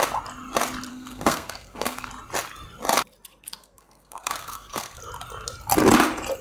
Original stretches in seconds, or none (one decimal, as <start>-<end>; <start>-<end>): 0.0-0.9; 2.1-3.6; 5.0-6.4